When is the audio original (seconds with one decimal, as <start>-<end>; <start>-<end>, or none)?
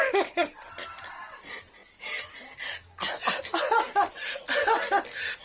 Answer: 0.0-5.4